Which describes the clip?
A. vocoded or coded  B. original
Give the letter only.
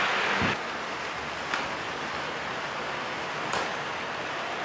B